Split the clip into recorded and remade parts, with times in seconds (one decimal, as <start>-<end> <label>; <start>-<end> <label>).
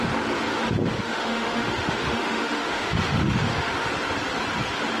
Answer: 0.0-0.9 recorded; 0.9-3.9 remade; 3.9-5.0 recorded